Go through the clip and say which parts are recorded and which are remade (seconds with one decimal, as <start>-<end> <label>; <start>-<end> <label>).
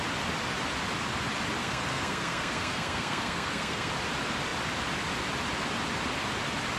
0.0-1.6 recorded; 1.6-3.9 remade; 3.9-6.8 recorded